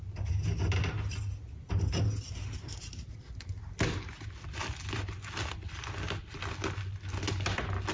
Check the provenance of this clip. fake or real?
real